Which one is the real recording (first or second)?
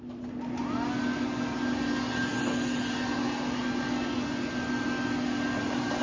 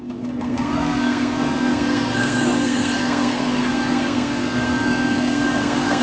first